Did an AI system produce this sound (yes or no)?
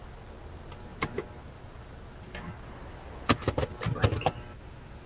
no